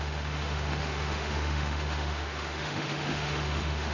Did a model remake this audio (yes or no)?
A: yes